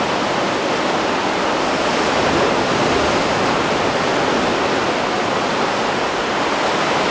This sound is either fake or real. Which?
real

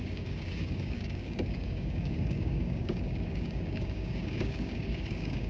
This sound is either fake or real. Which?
fake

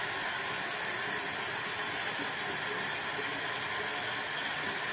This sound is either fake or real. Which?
real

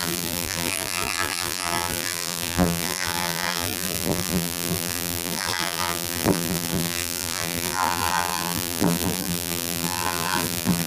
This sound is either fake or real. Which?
fake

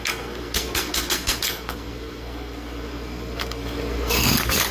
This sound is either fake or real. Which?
fake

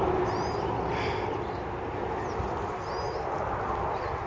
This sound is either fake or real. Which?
real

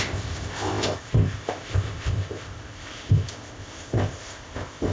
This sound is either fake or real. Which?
fake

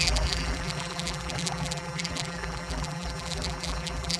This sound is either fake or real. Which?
fake